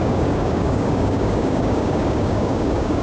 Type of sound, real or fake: fake